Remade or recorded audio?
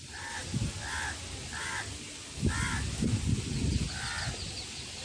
recorded